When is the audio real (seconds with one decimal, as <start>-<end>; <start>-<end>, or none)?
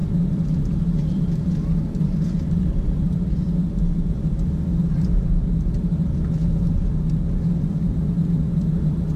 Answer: 6.4-7.7